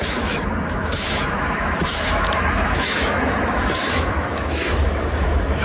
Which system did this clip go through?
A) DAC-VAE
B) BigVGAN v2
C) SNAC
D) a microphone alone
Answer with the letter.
A